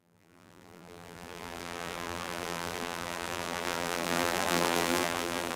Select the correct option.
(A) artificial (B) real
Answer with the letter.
A